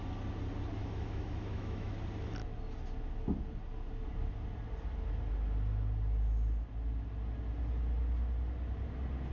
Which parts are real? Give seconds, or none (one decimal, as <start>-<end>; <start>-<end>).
0.0-0.8; 1.9-9.3

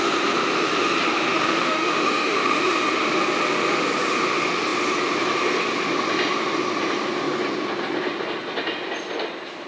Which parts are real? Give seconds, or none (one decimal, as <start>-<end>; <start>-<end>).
0.0-1.3; 3.0-9.7